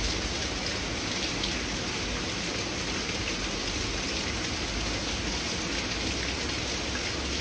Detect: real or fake real